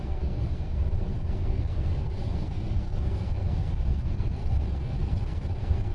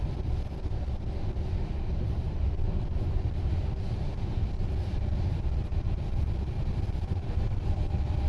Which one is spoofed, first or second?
first